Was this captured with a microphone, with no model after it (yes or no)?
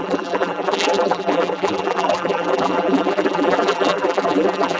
no